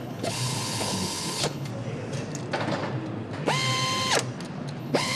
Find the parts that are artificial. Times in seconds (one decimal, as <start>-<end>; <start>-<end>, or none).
0.0-1.7; 4.8-5.2